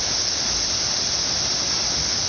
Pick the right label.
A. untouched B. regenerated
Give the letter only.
A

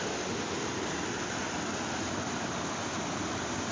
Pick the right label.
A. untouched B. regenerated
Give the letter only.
A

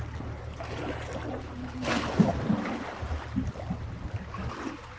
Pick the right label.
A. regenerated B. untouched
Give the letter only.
B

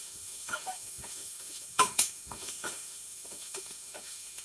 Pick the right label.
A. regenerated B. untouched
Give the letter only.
A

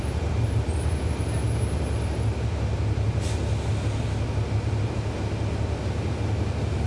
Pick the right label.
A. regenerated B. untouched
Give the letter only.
B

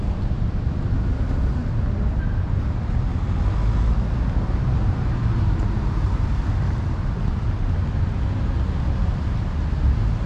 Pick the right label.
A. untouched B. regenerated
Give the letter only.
A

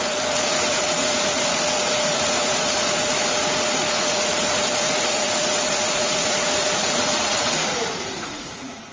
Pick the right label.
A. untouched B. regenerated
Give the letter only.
B